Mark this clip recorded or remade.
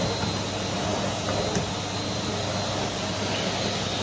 recorded